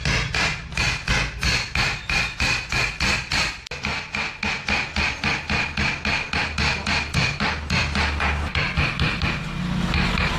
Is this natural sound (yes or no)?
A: yes